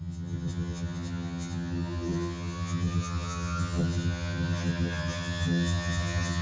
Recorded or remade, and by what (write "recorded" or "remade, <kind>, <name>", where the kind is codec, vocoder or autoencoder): remade, vocoder, HiFi-GAN